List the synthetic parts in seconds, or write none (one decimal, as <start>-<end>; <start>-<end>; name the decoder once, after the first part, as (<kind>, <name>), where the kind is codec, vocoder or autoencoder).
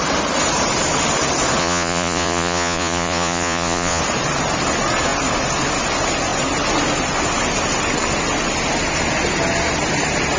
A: 1.6-4.0 (vocoder, Vocos)